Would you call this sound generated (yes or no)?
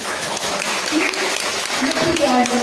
yes